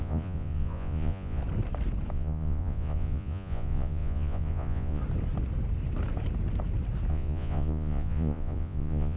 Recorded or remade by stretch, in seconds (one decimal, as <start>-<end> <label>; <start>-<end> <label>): 0.0-1.4 remade; 1.4-2.1 recorded; 2.1-5.0 remade; 5.0-7.1 recorded; 7.1-9.2 remade